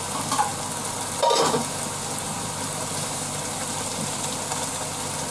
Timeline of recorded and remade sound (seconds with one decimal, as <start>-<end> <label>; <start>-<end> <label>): 0.0-5.3 recorded